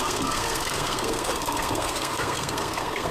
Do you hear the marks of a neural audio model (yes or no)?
yes